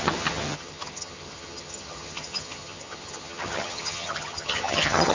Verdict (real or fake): fake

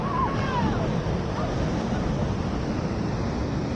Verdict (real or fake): real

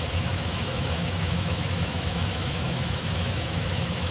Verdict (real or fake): fake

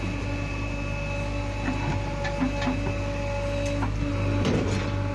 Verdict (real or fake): real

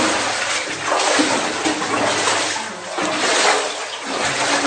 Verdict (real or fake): real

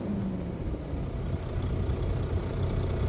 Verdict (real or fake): real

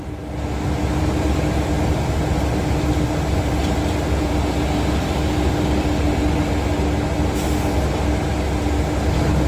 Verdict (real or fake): real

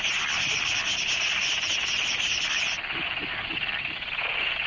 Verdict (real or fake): fake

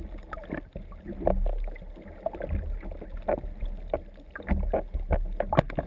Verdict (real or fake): real